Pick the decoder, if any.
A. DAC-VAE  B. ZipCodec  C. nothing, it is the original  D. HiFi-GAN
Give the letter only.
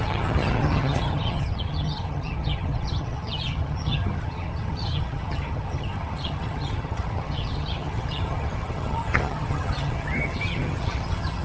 D